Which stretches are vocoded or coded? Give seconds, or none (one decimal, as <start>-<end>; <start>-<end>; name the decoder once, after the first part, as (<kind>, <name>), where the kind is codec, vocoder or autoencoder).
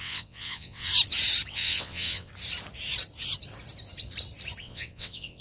0.0-0.9 (vocoder, WaveNeXt); 1.5-2.3; 4.6-5.4